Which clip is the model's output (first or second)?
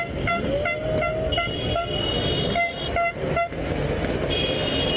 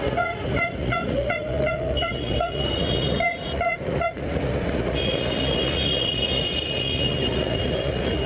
second